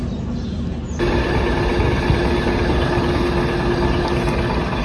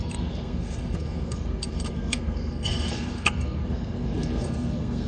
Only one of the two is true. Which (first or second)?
first